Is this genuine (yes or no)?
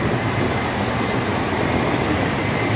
no